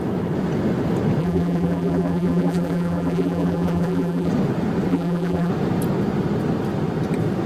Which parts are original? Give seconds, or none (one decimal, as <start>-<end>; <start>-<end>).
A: 0.0-1.2; 4.3-4.9; 5.5-7.5